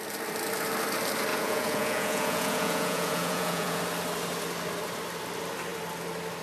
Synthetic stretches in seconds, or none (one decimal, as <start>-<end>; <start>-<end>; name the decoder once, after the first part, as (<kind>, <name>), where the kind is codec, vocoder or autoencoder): 1.3-3.8 (vocoder, Vocos)